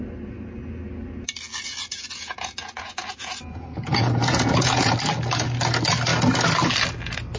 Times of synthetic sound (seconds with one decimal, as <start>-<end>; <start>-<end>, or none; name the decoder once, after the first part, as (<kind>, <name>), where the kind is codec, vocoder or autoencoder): 1.5-4.9 (vocoder, Vocos)